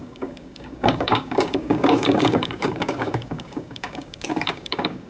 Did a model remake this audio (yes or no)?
yes